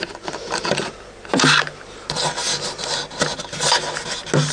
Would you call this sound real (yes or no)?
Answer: yes